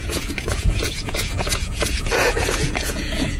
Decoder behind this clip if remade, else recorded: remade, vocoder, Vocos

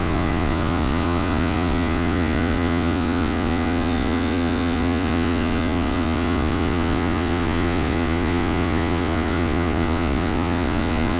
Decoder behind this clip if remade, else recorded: remade, vocoder, Vocos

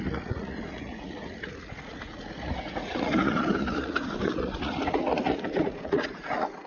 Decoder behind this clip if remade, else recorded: remade, vocoder, Vocos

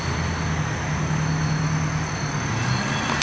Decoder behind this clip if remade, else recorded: recorded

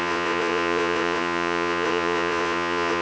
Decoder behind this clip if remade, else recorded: remade, vocoder, Vocos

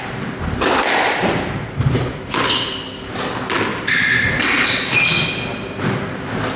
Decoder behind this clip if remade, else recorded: recorded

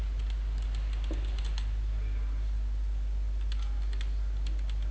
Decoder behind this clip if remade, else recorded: recorded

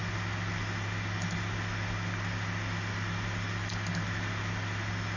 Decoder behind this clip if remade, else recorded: recorded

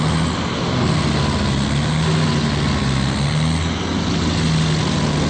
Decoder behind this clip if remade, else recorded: recorded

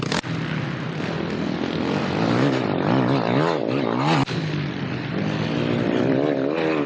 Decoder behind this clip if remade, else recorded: recorded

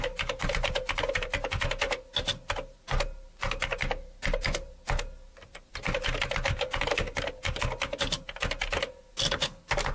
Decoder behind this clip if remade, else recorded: recorded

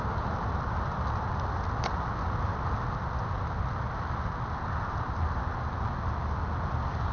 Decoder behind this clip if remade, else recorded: recorded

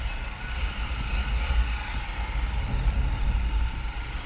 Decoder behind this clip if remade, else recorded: recorded